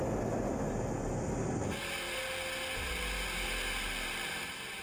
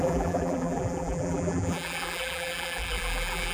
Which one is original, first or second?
first